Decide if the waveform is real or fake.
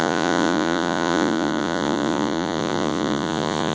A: fake